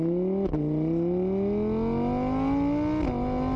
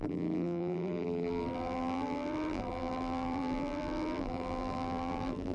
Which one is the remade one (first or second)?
second